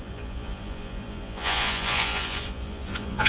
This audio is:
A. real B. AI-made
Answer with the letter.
B